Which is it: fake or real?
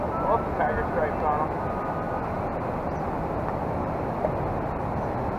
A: real